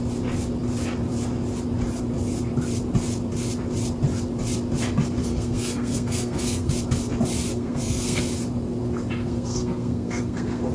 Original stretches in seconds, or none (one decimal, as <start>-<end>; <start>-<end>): 0.0-5.2; 6.7-7.5; 8.2-9.2